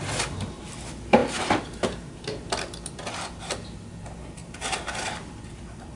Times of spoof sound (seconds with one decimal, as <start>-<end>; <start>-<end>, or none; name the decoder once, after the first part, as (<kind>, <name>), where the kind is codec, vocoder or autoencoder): none